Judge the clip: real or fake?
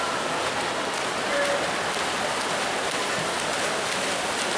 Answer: real